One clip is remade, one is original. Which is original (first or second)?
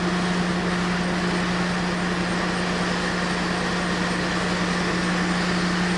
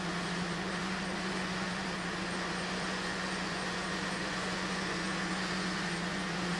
first